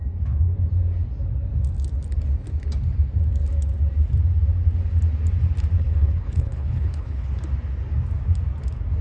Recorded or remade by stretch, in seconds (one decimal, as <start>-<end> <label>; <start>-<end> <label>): 0.0-5.8 recorded; 5.8-7.3 remade; 7.3-9.0 recorded